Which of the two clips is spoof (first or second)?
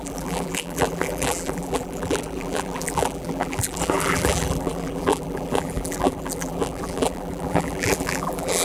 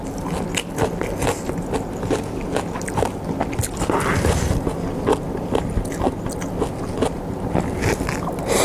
first